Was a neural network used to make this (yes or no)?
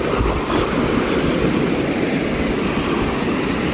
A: no